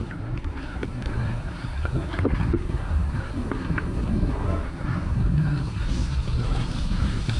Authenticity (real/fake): fake